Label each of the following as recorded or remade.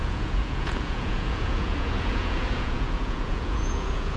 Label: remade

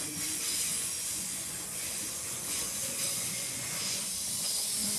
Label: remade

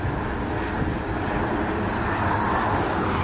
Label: recorded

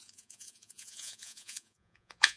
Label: remade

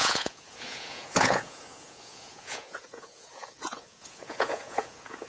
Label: remade